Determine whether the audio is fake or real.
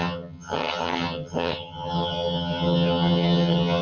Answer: fake